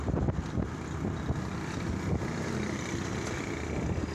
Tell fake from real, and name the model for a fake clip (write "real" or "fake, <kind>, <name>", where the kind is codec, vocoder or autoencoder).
real